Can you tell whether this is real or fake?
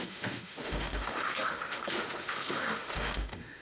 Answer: fake